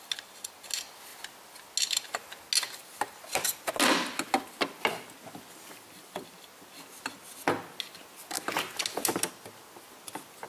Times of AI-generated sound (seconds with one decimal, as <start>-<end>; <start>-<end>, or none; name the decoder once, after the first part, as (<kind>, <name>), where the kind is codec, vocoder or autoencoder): none